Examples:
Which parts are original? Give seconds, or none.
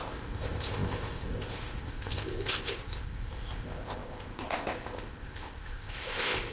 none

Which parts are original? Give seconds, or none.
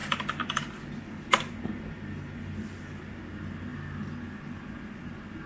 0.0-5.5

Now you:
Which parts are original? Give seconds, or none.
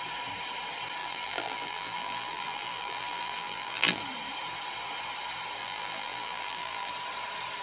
0.0-1.0; 4.0-5.6; 6.9-7.6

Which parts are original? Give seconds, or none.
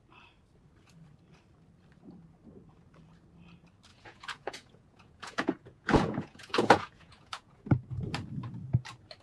0.0-3.9; 7.6-9.2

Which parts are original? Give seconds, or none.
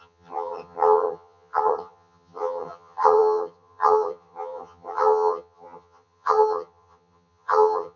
none